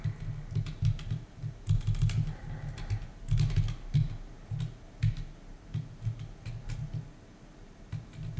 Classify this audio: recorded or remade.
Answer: recorded